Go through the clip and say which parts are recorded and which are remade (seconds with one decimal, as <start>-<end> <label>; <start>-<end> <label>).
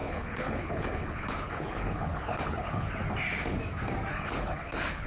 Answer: 0.0-2.9 remade; 2.9-4.1 recorded; 4.1-5.1 remade